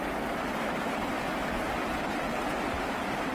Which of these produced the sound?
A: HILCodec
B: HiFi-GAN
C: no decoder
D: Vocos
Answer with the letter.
C